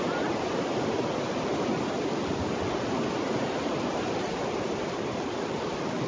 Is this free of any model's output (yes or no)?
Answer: yes